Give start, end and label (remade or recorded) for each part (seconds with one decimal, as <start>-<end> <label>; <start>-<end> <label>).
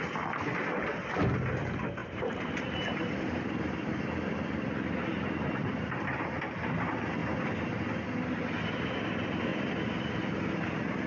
0.0-2.0 recorded; 2.0-3.9 remade; 3.9-5.6 recorded; 5.6-6.4 remade; 6.4-11.1 recorded